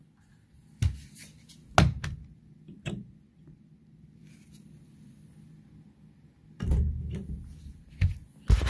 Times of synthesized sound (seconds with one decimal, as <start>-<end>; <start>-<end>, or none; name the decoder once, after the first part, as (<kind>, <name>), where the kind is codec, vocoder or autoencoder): none